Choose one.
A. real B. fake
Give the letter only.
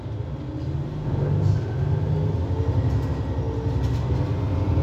A